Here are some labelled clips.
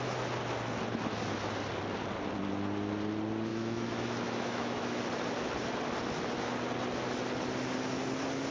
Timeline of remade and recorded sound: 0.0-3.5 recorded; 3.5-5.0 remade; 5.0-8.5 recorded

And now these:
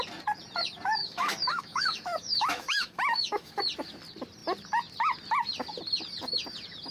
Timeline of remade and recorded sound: 0.0-1.0 recorded; 1.0-3.6 remade; 3.6-6.9 recorded

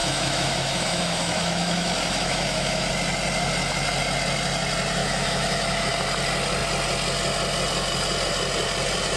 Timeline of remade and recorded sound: 0.0-2.9 remade; 2.9-5.0 recorded; 5.0-5.9 remade; 5.9-9.2 recorded

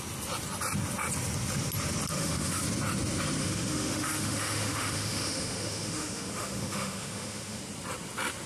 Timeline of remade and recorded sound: 0.0-2.1 recorded; 2.1-2.6 remade; 2.6-3.4 recorded; 3.4-7.6 remade; 7.6-8.5 recorded

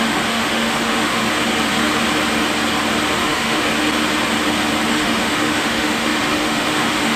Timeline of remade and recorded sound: 0.0-1.2 remade; 1.2-3.2 recorded; 3.2-3.7 remade; 3.7-4.9 recorded; 4.9-7.2 remade

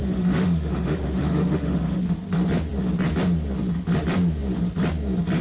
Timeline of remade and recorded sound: 0.0-2.0 remade; 2.0-5.4 recorded

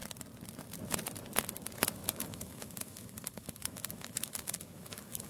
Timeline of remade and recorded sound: 0.0-2.0 recorded; 2.0-5.3 remade

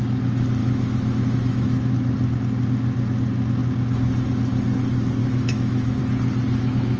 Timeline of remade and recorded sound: 0.0-0.6 recorded; 0.6-1.9 remade; 1.9-5.2 recorded; 5.2-6.0 remade; 6.0-7.0 recorded